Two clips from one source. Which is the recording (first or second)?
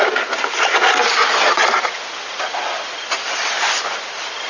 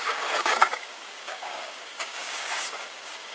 first